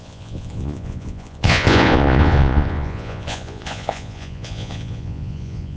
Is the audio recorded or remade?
remade